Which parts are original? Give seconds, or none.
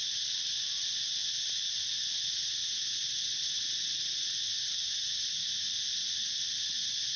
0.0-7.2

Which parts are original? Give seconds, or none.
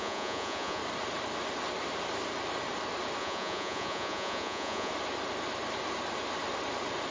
0.8-3.2; 4.9-7.1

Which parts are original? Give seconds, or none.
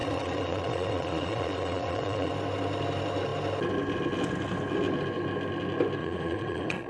2.3-6.0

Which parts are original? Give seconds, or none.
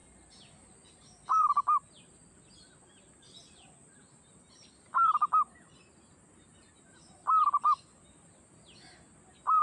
0.0-9.6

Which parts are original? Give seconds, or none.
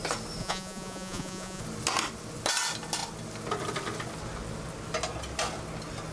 0.0-0.4; 1.6-6.1